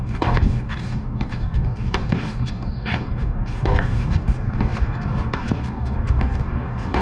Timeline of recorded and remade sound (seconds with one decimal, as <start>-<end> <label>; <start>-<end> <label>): 0.0-7.0 remade